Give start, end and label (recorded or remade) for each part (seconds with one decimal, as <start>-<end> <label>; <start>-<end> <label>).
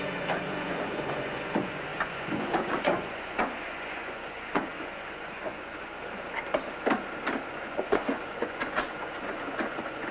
0.0-6.0 remade; 6.0-7.5 recorded; 7.5-10.1 remade